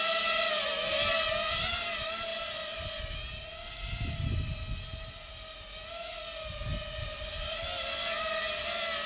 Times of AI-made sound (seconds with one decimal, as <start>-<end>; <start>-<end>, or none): 2.3-3.0; 7.3-8.2